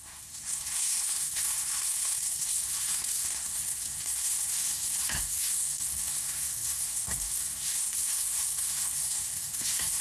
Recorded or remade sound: remade